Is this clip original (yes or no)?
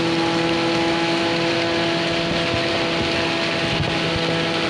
yes